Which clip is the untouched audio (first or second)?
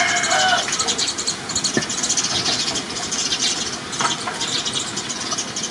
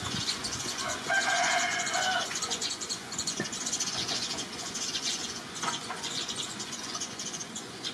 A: first